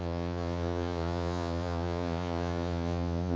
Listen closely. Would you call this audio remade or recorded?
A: remade